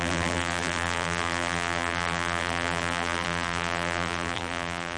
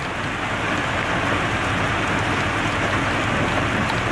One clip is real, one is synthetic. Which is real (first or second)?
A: second